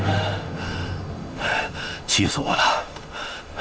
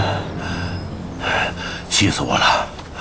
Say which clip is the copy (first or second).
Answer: first